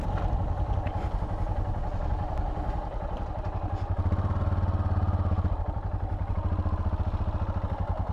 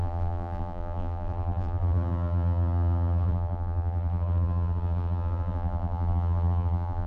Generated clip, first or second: second